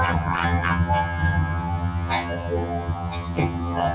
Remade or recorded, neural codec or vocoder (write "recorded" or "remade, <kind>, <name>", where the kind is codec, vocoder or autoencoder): remade, vocoder, HiFi-GAN